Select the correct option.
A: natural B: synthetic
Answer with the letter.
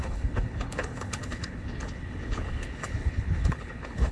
B